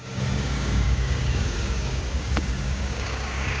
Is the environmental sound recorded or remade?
remade